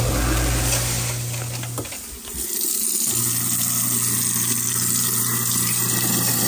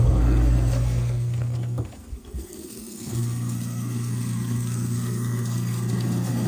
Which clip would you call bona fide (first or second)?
first